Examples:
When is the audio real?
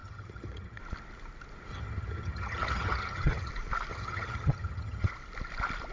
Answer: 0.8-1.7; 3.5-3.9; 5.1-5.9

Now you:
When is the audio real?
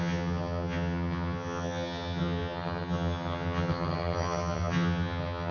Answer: none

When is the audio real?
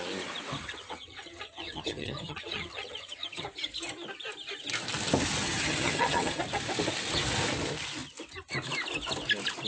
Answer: 0.0-0.5; 3.4-5.4; 6.4-9.7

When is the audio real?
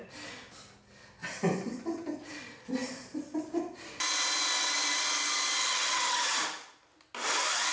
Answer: 0.0-5.6; 6.4-7.7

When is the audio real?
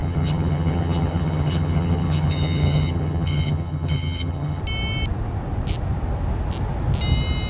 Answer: 4.6-7.5